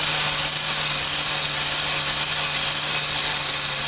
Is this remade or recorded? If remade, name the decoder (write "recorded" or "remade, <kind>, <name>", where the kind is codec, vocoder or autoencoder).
recorded